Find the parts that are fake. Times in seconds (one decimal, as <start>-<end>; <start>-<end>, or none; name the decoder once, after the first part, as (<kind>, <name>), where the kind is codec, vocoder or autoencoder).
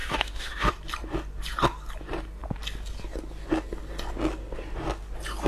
0.0-0.7 (autoencoder, DAC-VAE)